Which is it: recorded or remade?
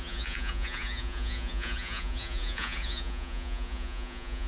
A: remade